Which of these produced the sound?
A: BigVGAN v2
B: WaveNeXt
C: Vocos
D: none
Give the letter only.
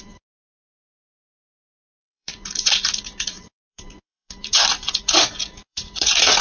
C